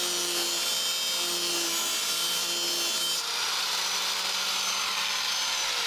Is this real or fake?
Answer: real